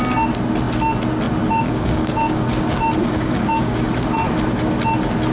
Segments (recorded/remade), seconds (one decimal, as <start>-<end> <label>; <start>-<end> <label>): 0.0-1.4 recorded; 1.4-2.5 remade; 2.5-3.0 recorded; 3.0-3.9 remade; 3.9-5.3 recorded